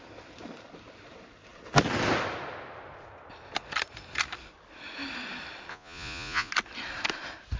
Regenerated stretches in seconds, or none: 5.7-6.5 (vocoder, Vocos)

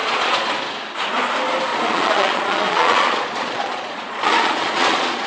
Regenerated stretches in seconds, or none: 0.0-0.5 (vocoder, Vocos); 1.7-5.3

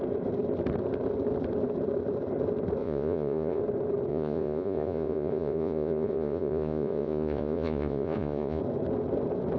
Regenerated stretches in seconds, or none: 2.8-3.6 (vocoder, Vocos); 4.1-8.6

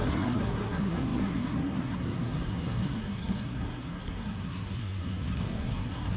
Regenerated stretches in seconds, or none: 0.0-6.2 (codec, SNAC)

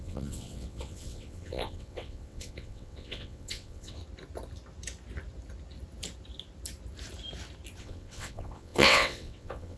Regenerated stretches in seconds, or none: 0.0-4.0 (vocoder, WaveNeXt); 7.8-9.8